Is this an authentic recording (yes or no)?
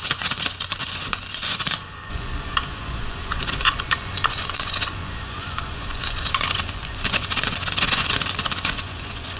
no